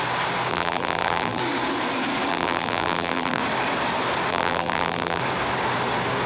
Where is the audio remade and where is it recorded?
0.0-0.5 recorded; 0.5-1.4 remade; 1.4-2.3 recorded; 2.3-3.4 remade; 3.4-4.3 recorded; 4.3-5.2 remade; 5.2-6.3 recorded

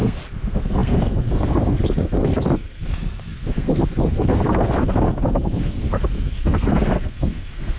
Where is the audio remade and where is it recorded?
0.0-7.8 remade

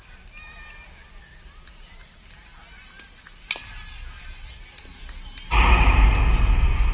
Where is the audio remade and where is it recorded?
0.0-6.9 recorded

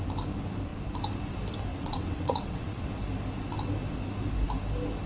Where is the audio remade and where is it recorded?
0.0-1.7 recorded; 1.7-2.9 remade; 2.9-5.1 recorded

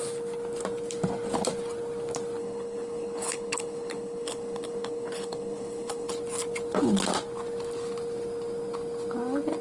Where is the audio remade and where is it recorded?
0.0-2.4 recorded; 2.4-6.1 remade; 6.1-9.6 recorded

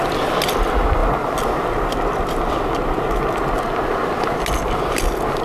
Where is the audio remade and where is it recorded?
0.0-5.4 recorded